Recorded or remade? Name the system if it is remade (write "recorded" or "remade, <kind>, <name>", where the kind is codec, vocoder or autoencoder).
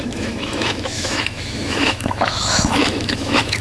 remade, autoencoder, DAC-VAE